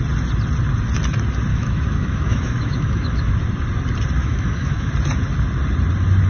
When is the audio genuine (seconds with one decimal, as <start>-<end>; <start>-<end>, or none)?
0.0-1.5; 3.3-4.2; 4.9-6.3